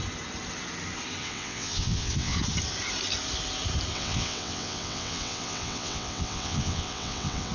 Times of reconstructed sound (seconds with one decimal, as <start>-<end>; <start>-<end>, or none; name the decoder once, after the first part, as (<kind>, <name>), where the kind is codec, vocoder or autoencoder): 1.2-2.4 (vocoder, WaveNeXt); 3.9-7.5